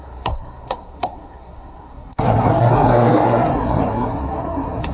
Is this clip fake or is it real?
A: fake